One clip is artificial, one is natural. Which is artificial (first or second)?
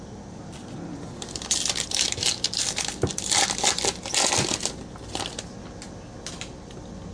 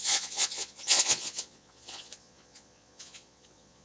second